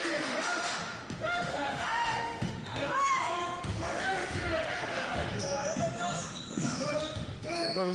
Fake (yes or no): yes